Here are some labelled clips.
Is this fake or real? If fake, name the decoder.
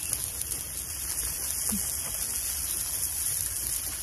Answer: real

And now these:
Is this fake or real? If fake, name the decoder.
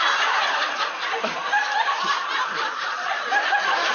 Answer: fake, vocoder, BigVGAN v2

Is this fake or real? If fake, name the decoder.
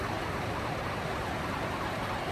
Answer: real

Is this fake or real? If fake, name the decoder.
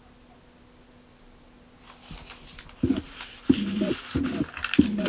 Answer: real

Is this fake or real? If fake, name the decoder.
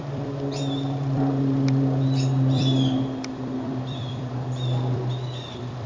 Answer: fake, vocoder, BigVGAN v2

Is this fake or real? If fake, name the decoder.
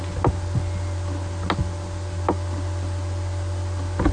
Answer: real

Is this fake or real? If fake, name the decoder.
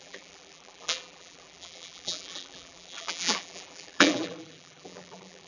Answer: fake, vocoder, BigVGAN v2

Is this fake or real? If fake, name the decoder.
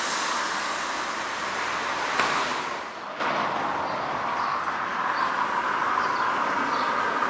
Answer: real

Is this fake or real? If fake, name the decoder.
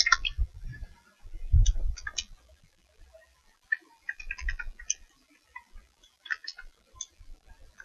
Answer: fake, vocoder, BigVGAN v2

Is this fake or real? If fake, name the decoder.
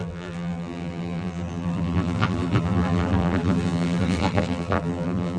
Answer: fake, vocoder, BigVGAN v2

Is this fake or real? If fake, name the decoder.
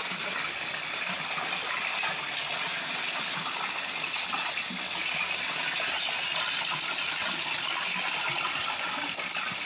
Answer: real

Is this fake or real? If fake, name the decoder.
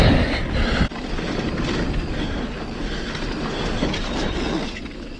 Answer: real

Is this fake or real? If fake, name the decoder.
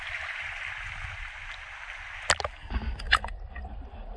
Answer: real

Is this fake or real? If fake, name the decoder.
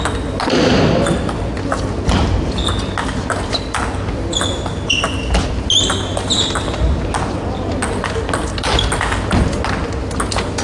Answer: real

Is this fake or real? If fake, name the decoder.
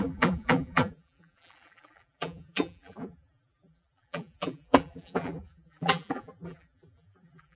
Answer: fake, vocoder, BigVGAN v2